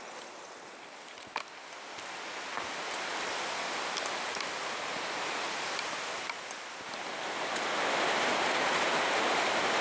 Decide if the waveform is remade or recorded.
recorded